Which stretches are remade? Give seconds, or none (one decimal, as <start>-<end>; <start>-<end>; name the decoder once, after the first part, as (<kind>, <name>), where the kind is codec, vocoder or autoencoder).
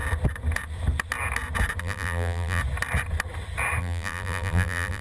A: 1.8-2.6 (vocoder, BigVGAN v2); 3.8-5.0